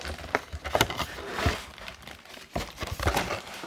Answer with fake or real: real